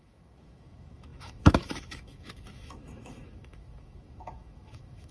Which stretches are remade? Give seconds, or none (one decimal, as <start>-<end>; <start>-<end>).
0.0-5.1